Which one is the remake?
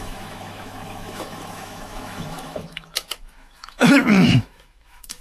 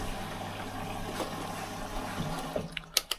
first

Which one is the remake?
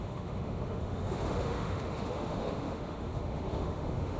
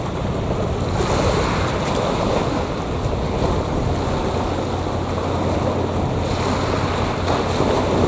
first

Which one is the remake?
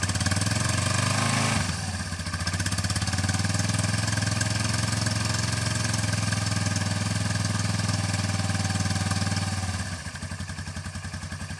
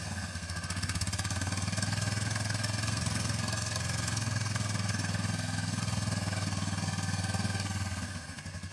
second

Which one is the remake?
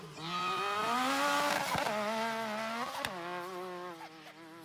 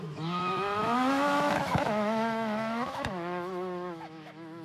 second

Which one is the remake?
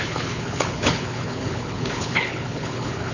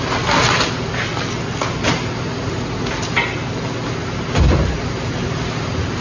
first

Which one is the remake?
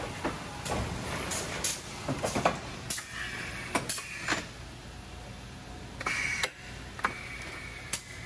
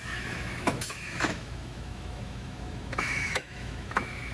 second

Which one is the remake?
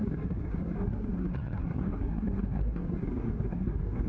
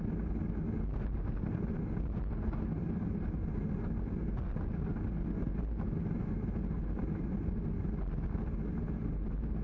first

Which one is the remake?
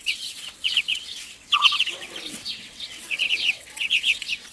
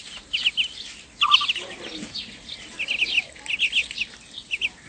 first